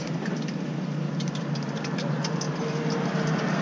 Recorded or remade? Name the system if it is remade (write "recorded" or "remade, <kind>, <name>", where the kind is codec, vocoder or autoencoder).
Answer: recorded